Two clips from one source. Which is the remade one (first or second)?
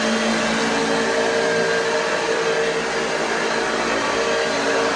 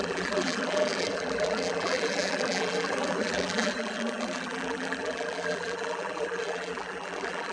second